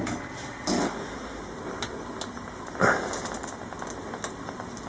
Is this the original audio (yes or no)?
yes